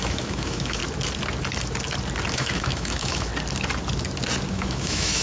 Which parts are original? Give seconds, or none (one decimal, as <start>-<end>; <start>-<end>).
0.8-2.3; 3.3-4.5